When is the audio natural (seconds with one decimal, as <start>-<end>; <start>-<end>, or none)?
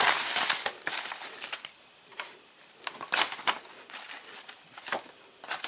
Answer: 0.0-2.1; 5.0-5.7